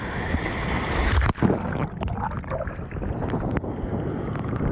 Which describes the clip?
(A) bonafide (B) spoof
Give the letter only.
A